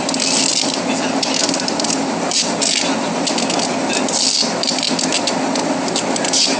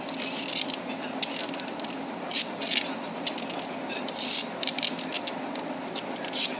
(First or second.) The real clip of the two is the first